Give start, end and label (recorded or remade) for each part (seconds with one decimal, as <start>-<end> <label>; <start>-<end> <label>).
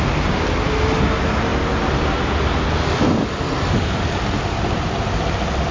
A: 0.0-5.7 recorded